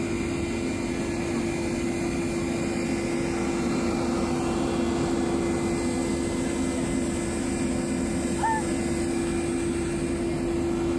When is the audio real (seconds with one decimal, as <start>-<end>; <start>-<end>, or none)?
0.0-11.0